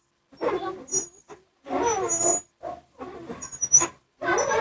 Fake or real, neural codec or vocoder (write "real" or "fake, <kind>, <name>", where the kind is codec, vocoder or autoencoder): real